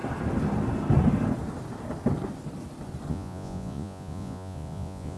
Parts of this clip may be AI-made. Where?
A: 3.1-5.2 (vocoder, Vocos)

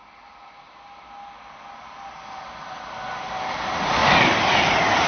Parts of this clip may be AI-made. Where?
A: none

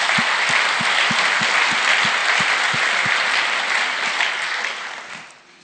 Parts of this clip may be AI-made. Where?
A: none

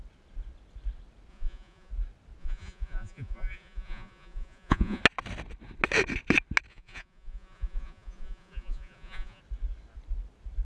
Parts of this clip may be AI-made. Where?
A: 1.3-1.9 (vocoder, Vocos); 2.4-5.0; 6.7-9.4

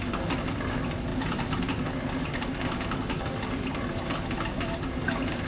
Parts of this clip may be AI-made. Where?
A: none

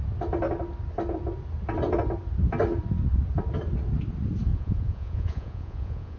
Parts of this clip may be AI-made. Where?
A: 4.5-6.2 (vocoder, Vocos)